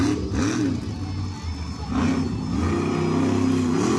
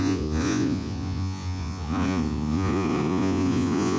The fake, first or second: second